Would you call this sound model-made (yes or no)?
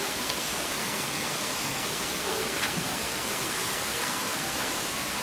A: yes